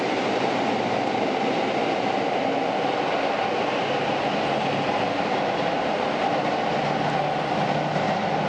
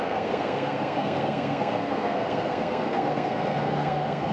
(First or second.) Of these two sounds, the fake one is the second